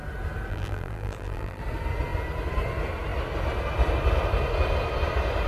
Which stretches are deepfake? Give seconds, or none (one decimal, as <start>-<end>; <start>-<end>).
0.5-1.6